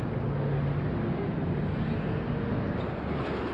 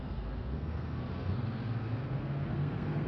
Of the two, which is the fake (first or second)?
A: second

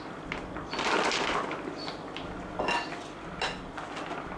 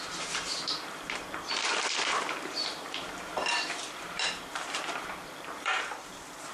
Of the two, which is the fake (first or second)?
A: second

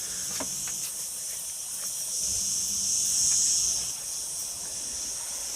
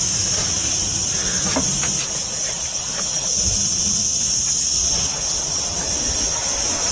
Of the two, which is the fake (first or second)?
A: second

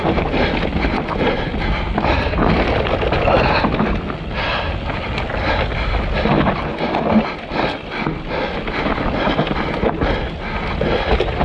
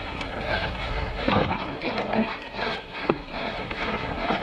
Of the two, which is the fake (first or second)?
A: second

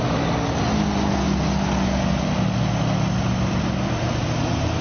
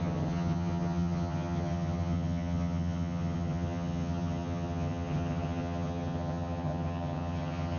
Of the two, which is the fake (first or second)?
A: second